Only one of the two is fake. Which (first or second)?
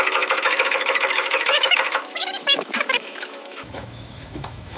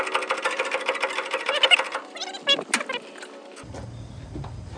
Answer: first